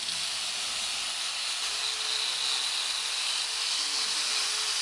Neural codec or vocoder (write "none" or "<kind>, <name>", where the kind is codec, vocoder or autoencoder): none